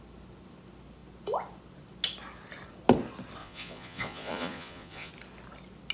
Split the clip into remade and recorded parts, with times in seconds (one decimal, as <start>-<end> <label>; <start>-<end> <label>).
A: 0.0-3.4 recorded; 3.4-5.1 remade; 5.1-5.9 recorded